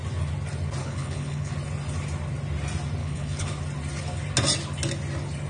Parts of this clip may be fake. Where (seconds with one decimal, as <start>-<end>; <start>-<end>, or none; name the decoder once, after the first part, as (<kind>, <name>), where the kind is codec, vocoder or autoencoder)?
0.8-1.5 (codec, HILCodec); 3.0-3.5